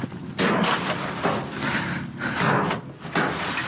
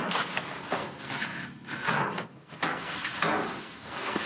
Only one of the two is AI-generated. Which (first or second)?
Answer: second